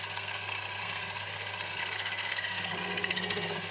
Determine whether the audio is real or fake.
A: fake